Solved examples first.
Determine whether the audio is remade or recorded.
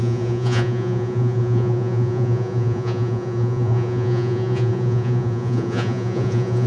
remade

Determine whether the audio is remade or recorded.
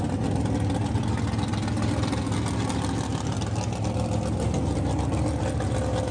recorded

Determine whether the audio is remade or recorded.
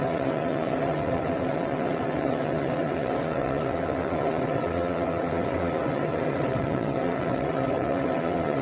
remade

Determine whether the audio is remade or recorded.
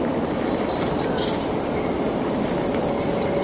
recorded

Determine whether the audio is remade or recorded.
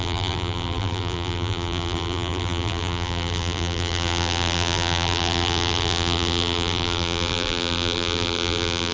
remade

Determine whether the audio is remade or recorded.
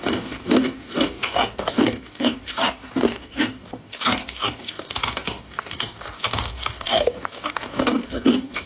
remade